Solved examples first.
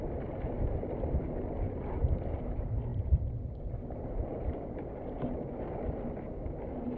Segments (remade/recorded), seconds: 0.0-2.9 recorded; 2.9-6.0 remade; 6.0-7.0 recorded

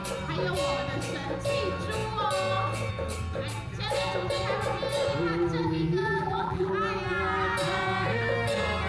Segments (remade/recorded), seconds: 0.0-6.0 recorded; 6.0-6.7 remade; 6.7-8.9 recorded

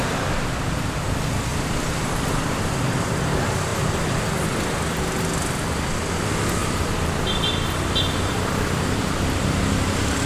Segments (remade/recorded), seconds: 0.0-1.5 recorded; 1.5-3.2 remade; 3.2-3.7 recorded; 3.7-4.2 remade; 4.2-6.6 recorded; 6.6-9.0 remade; 9.0-10.3 recorded

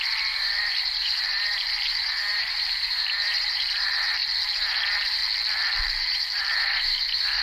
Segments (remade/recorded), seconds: 0.0-5.2 remade; 5.2-5.8 recorded; 5.8-7.4 remade

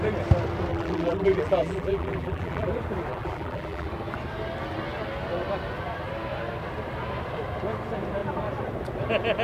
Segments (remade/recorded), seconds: 0.0-0.7 recorded; 0.7-2.7 remade; 2.7-3.1 recorded; 3.1-3.9 remade; 3.9-9.4 recorded

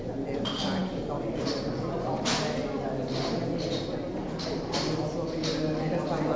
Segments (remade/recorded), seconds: 0.0-6.4 recorded